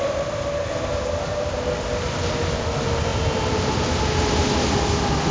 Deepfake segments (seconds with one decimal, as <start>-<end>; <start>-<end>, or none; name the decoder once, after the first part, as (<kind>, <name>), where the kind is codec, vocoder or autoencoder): none